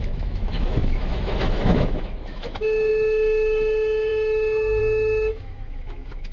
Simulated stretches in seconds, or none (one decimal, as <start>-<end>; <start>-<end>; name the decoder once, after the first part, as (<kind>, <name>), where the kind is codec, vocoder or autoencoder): 0.0-6.3 (autoencoder, DAC-VAE)